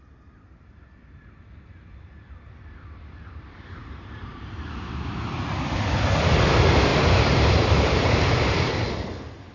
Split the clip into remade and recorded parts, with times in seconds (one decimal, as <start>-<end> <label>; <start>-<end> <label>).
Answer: 0.0-3.8 recorded; 3.8-5.2 remade; 5.2-6.9 recorded; 6.9-8.7 remade; 8.7-9.5 recorded